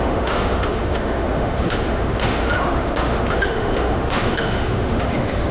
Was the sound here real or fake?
fake